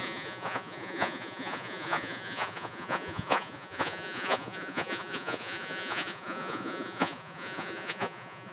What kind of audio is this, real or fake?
fake